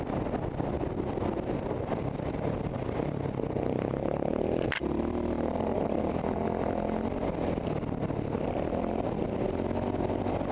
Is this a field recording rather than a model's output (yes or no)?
yes